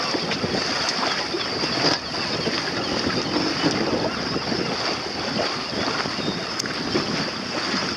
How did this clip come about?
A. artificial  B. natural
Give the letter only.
B